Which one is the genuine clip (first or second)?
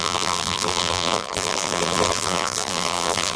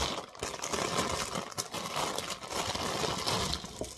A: second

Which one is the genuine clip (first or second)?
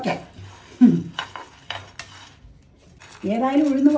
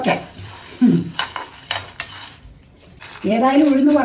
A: first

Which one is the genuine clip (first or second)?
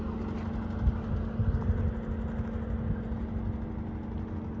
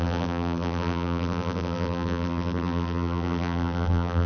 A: first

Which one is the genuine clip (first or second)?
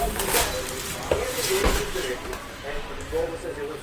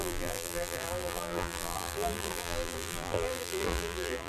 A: first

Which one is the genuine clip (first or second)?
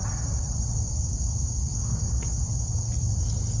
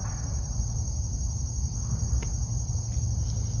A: second